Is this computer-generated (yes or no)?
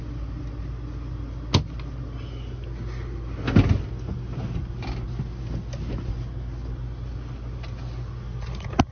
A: no